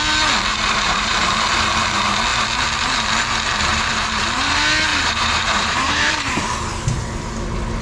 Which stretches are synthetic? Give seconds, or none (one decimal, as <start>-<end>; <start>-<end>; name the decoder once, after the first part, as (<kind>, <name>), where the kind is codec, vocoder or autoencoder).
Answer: 0.5-1.1 (vocoder, BigVGAN v2); 3.7-4.5; 4.9-6.4